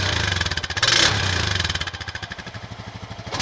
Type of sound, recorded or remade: recorded